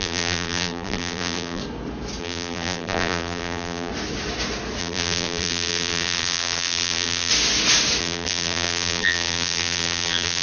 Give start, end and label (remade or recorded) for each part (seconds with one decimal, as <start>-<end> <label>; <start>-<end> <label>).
0.0-1.6 remade; 1.6-2.2 recorded; 2.2-3.9 remade; 3.9-4.8 recorded; 4.8-7.3 remade; 7.3-8.0 recorded; 8.0-10.4 remade